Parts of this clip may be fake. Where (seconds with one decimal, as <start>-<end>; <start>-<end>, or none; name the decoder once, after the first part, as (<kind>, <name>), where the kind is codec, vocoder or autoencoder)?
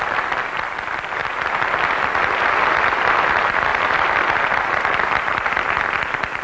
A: none